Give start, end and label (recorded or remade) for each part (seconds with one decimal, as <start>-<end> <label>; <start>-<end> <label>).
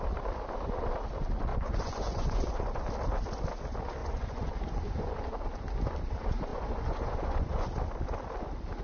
0.0-1.5 recorded; 1.5-2.8 remade; 2.8-4.0 recorded; 4.0-5.1 remade; 5.1-6.5 recorded; 6.5-7.7 remade; 7.7-8.8 recorded